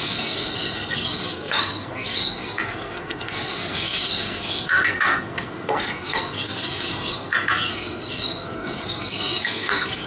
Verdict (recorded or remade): remade